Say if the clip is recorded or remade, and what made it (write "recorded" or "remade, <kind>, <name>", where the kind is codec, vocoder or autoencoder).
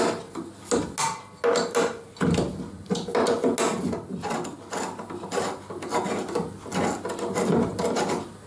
recorded